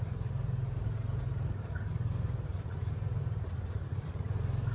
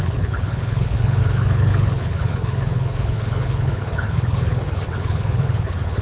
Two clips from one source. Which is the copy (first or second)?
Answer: second